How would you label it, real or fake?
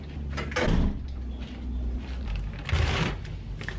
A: real